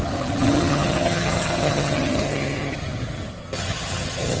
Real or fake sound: fake